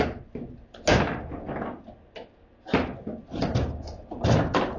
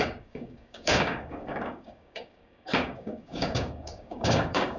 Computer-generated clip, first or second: second